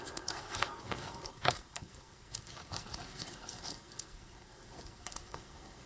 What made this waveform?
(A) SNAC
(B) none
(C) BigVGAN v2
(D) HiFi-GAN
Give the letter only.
A